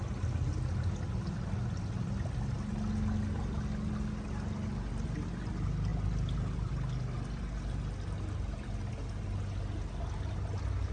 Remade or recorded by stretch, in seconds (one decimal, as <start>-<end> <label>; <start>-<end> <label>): 0.0-10.9 recorded